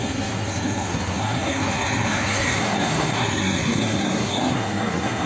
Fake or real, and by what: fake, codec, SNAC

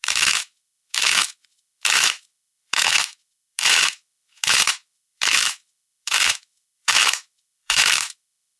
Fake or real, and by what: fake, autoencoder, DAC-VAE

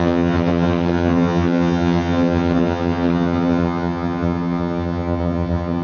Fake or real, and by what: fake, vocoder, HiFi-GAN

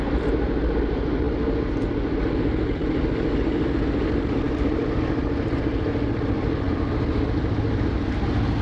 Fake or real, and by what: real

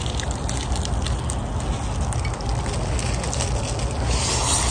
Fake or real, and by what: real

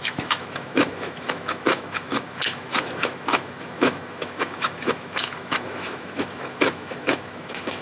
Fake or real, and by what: fake, autoencoder, DAC-VAE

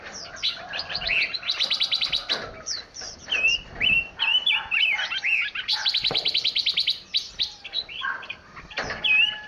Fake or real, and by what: fake, vocoder, BigVGAN v2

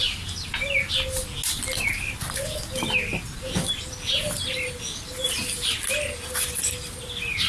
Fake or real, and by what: real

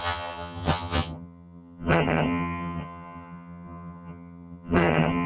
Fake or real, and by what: fake, vocoder, HiFi-GAN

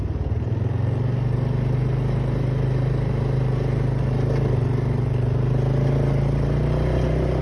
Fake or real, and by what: real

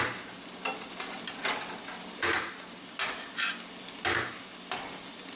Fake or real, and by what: real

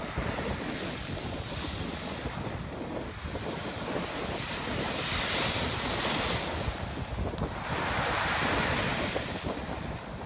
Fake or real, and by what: real